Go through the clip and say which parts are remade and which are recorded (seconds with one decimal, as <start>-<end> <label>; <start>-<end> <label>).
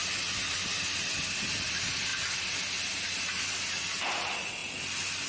0.0-5.3 recorded